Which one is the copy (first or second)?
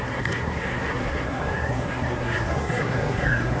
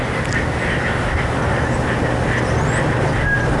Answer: first